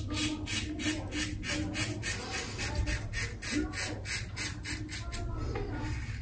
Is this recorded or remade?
recorded